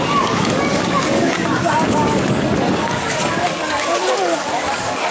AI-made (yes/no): yes